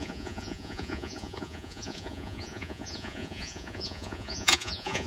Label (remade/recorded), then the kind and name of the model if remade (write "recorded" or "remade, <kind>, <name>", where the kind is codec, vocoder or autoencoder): remade, vocoder, Vocos